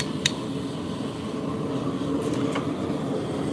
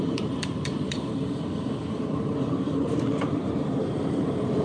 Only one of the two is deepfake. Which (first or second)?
second